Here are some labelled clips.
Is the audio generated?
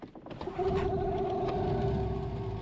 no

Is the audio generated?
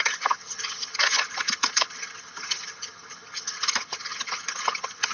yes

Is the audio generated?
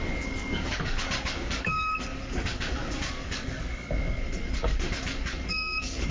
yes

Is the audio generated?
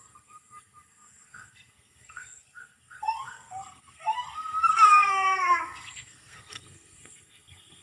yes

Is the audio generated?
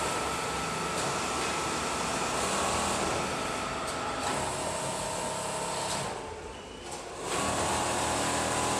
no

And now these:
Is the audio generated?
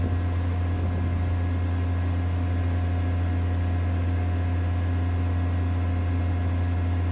no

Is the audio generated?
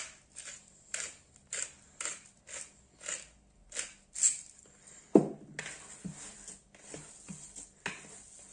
no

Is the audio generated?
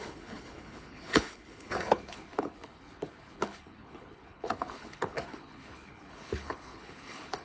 yes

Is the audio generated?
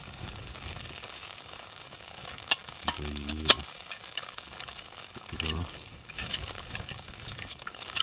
yes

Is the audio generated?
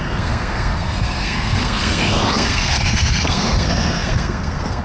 yes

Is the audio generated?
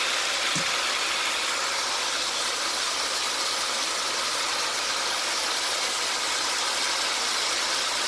no